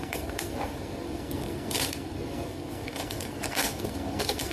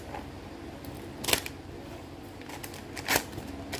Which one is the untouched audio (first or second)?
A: second